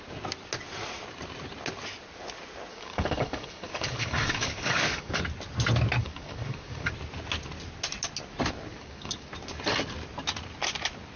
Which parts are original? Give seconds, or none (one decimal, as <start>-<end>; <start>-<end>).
0.0-2.7; 5.2-6.0; 6.9-8.7; 9.3-11.2

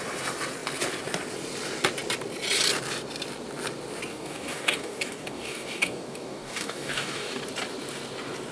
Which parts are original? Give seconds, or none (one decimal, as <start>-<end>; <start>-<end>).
0.0-4.1; 7.4-8.5